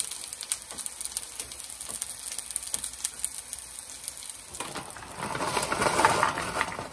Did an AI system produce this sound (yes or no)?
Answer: no